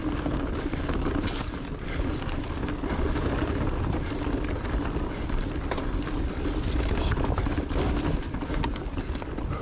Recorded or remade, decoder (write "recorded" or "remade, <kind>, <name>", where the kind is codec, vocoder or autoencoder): recorded